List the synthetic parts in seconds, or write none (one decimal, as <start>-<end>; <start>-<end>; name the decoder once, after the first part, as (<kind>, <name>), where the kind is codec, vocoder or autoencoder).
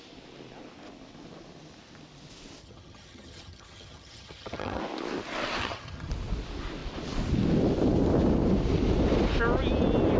2.6-4.8 (vocoder, HiFi-GAN); 5.6-6.1